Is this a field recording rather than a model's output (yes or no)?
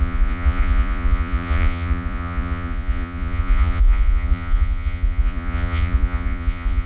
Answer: no